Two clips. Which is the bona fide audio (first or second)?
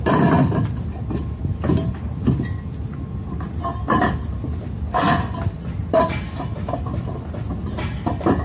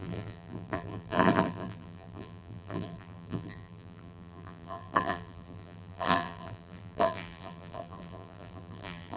first